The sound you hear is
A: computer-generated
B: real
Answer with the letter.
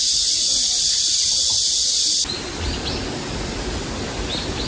B